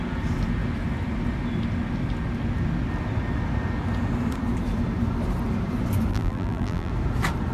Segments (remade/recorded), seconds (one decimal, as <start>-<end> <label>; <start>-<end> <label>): 0.0-6.1 recorded; 6.1-6.9 remade; 6.9-7.5 recorded